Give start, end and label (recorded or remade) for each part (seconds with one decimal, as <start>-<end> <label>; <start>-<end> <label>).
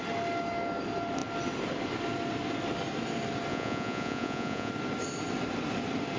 0.0-3.5 recorded; 3.5-4.7 remade; 4.7-6.2 recorded